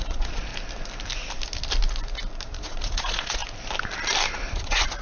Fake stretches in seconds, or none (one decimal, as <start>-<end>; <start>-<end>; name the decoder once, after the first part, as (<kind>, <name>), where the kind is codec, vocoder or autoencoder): 0.0-0.5 (vocoder, Vocos); 2.6-3.4; 4.3-5.0